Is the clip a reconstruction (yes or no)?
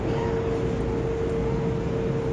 no